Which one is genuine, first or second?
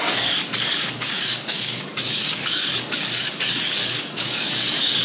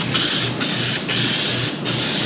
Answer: second